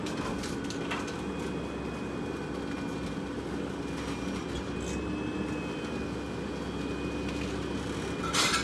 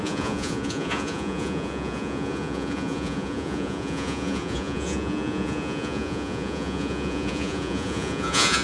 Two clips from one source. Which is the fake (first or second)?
second